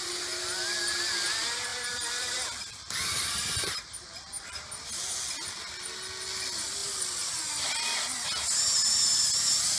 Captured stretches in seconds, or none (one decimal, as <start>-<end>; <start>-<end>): 0.0-1.7; 5.1-9.8